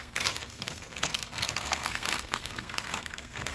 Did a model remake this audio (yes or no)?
yes